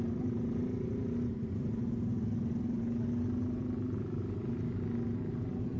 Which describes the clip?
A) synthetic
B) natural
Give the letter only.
B